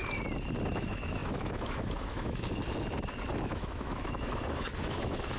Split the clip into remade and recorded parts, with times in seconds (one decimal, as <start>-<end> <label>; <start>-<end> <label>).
0.0-0.7 recorded; 0.7-2.6 remade; 2.6-3.4 recorded; 3.4-5.4 remade